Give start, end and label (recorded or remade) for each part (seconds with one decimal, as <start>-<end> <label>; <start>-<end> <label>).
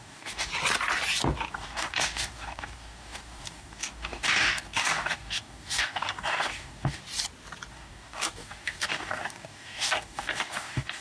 0.0-0.5 remade; 0.5-1.5 recorded; 1.5-7.0 remade; 7.0-7.7 recorded; 7.7-11.0 remade